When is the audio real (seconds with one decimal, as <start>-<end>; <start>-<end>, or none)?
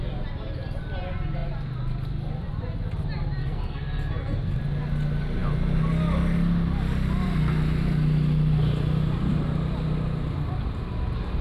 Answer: 0.0-3.4; 4.6-11.4